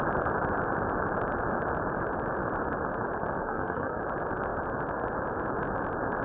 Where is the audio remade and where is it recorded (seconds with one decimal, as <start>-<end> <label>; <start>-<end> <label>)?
0.0-3.4 recorded; 3.4-4.0 remade; 4.0-6.2 recorded